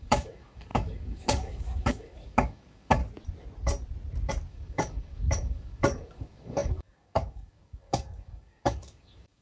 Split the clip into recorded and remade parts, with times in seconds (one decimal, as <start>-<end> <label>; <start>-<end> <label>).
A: 0.0-3.0 remade; 3.0-4.5 recorded; 4.5-9.4 remade